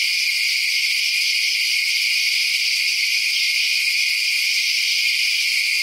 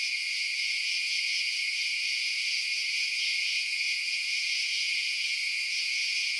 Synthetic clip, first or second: second